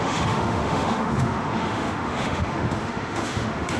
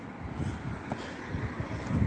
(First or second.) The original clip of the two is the second